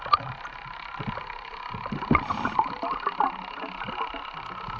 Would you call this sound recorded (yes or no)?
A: yes